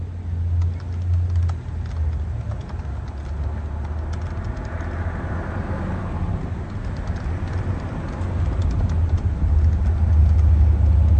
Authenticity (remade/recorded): recorded